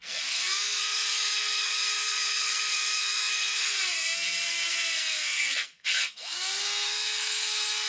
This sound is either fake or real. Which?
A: fake